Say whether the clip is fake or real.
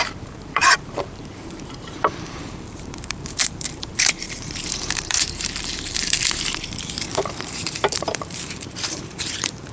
fake